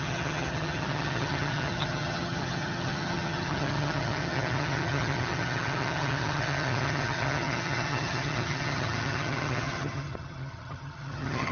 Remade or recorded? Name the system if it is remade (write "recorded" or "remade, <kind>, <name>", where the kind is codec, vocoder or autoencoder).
remade, vocoder, HiFi-GAN